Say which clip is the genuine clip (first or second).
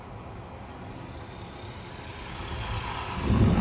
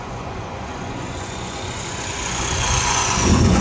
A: first